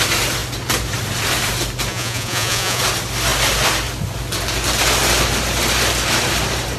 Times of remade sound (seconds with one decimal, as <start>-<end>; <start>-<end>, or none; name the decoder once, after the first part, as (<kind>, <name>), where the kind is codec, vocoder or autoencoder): 1.9-2.8 (vocoder, Vocos)